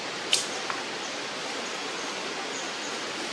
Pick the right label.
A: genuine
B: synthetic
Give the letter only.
A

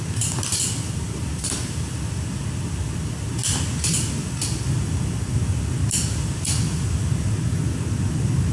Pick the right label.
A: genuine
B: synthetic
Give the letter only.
A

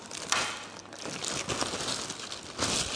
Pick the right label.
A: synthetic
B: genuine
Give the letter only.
B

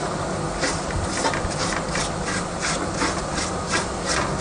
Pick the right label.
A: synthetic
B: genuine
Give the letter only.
B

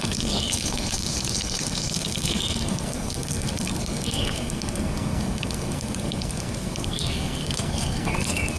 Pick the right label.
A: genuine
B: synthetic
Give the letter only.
B